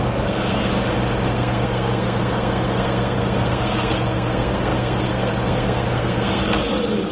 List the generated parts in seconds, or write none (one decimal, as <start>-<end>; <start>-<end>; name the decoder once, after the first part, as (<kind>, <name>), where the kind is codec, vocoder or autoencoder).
0.0-0.7 (codec, SNAC); 1.3-6.4